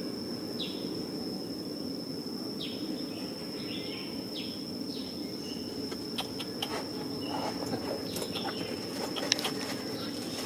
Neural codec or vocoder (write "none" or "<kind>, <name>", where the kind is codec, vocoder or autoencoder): none